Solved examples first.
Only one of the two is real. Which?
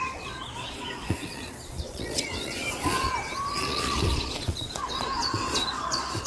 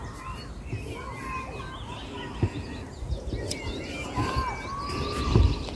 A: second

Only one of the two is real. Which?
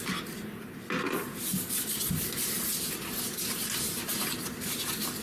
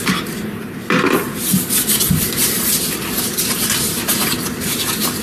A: first